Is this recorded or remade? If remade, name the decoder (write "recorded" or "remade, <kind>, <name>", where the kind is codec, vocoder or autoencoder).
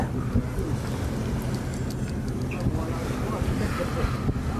recorded